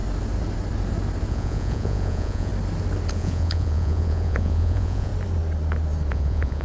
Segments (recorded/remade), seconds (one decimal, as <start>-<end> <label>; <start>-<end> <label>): 0.0-1.3 recorded; 1.3-2.5 remade; 2.5-3.1 recorded; 3.1-5.1 remade; 5.1-6.1 recorded; 6.1-6.6 remade